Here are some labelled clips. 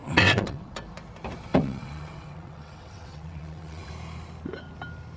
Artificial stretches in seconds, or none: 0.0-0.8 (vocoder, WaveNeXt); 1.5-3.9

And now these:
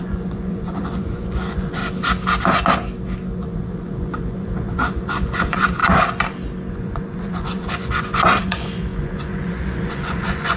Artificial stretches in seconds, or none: 0.0-1.8 (vocoder, Vocos); 3.3-5.8; 6.7-10.6

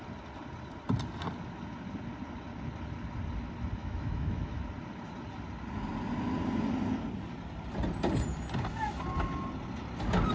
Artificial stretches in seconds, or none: 3.8-4.6 (autoencoder, DAC-VAE)

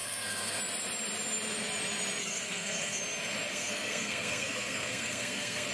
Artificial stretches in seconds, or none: 0.0-0.6 (codec, SNAC); 2.2-3.0; 3.5-5.7

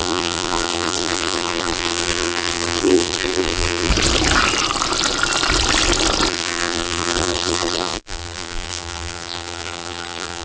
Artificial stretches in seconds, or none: 0.0-3.9 (vocoder, BigVGAN v2); 6.3-10.4